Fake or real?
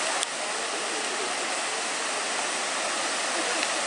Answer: real